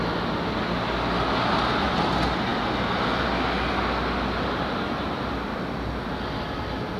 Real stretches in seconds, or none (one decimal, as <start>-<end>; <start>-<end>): 0.0-7.0